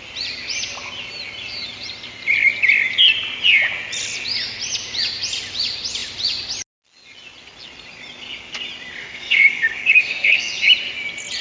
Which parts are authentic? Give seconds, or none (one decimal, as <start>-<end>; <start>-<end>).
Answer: 0.0-9.0; 10.5-11.4